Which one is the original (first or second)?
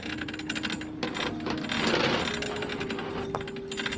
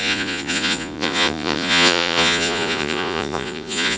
first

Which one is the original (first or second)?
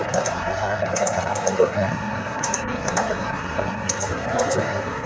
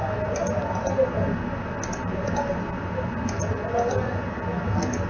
second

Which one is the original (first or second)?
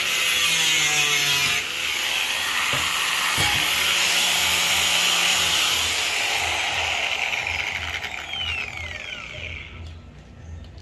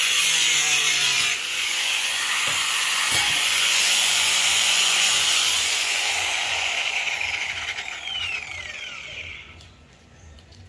first